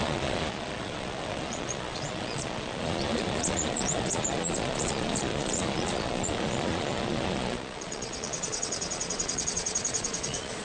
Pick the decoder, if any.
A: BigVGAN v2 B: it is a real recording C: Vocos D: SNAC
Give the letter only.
C